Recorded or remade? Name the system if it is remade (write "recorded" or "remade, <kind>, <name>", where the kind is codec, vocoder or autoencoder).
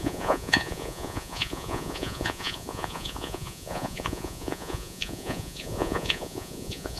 remade, vocoder, Vocos